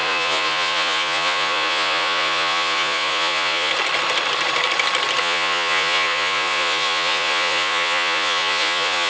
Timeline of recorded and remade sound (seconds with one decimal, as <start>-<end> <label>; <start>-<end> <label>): 0.0-3.7 remade; 3.7-5.2 recorded; 5.2-9.1 remade